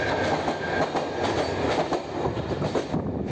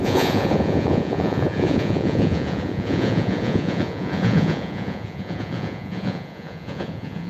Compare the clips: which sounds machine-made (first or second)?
second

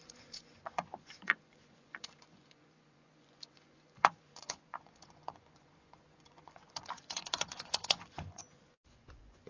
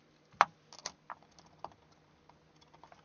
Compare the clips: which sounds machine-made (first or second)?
first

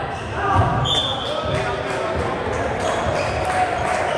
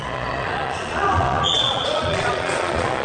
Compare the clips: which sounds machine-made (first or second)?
second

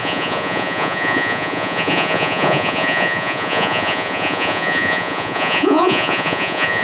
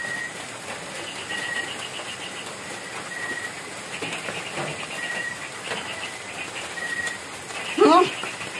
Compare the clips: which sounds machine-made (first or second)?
first